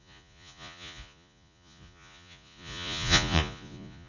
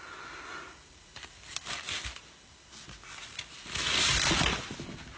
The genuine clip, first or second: second